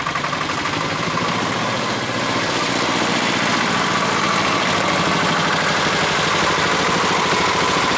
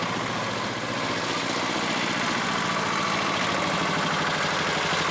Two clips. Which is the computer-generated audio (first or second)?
first